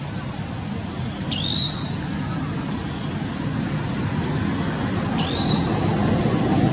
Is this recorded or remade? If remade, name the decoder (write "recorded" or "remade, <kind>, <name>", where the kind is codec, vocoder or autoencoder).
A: recorded